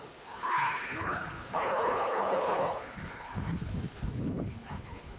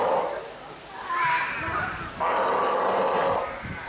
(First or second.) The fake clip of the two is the first